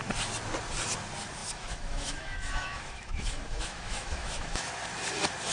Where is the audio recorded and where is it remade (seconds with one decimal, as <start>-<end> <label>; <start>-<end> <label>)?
0.0-1.4 recorded; 1.4-4.7 remade; 4.7-5.5 recorded